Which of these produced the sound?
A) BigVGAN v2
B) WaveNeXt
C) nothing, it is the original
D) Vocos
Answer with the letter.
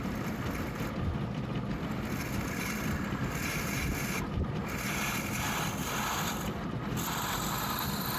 C